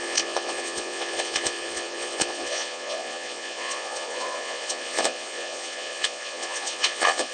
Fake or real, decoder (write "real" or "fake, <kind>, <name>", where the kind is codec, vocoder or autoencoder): fake, vocoder, Vocos